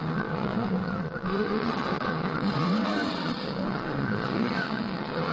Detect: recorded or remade remade